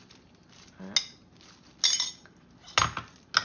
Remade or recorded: recorded